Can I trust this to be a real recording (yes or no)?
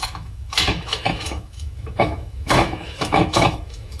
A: no